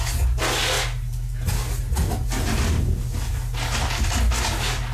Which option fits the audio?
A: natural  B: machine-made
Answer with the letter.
A